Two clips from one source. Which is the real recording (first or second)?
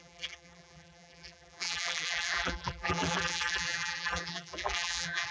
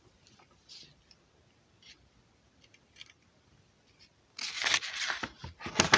second